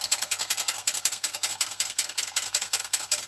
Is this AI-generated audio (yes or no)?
yes